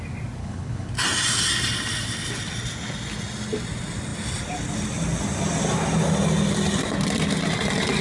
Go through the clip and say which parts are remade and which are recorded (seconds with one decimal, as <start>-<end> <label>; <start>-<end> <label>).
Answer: 0.0-0.4 recorded; 0.4-0.9 remade; 0.9-8.0 recorded